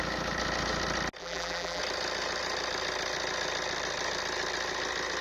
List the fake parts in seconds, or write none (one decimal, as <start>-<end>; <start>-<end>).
1.2-1.8